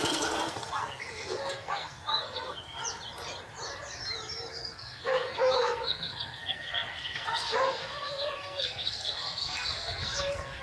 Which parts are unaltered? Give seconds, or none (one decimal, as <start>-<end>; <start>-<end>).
2.8-4.5

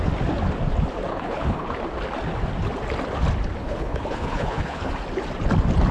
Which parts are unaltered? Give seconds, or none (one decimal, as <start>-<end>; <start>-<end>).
0.0-1.1; 1.7-3.6; 4.9-5.9